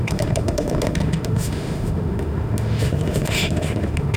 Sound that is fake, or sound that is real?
fake